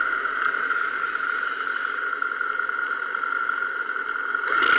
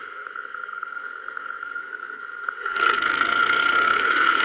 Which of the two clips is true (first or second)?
first